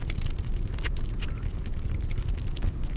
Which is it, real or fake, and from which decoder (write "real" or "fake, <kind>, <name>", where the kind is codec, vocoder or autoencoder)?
real